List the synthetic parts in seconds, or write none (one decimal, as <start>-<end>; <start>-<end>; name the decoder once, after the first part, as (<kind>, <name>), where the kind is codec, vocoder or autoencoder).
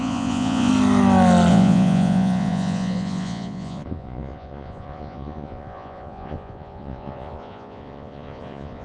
0.0-0.7 (vocoder, Vocos); 1.5-8.8